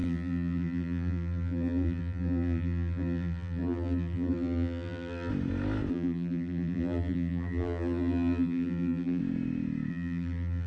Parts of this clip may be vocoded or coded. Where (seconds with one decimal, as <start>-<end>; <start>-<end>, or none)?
0.0-5.3; 5.9-9.2; 9.9-10.7